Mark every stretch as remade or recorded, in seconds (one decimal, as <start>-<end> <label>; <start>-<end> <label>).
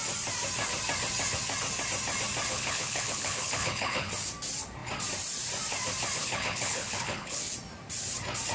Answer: 0.0-2.5 recorded; 2.5-4.1 remade; 4.1-6.2 recorded; 6.2-7.4 remade; 7.4-8.5 recorded